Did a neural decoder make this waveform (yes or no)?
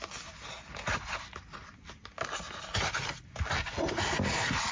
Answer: no